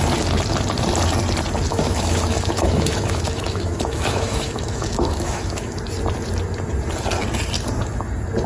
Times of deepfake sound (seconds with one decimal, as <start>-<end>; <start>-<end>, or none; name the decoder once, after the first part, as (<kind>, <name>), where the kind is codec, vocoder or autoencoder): 1.7-5.8 (autoencoder, DAC-VAE)